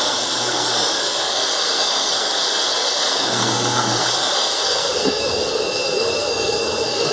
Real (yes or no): no